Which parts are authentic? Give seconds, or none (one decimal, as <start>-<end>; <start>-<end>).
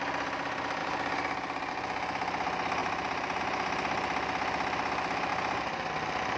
0.0-0.8; 1.7-2.8; 3.4-5.3; 5.9-6.4